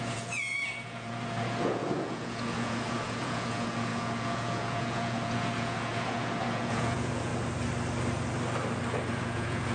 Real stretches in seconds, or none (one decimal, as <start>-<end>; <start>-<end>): 7.3-9.1